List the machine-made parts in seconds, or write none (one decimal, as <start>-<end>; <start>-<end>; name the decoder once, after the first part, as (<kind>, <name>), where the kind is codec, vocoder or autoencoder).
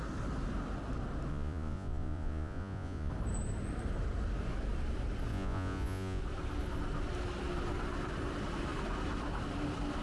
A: 1.3-3.1 (vocoder, Vocos); 5.3-6.2